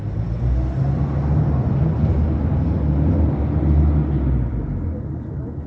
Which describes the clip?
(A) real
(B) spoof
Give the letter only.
A